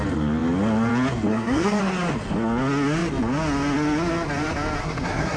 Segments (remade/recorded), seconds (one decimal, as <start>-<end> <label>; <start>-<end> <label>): 0.0-1.3 recorded; 1.3-1.8 remade; 1.8-4.8 recorded; 4.8-5.4 remade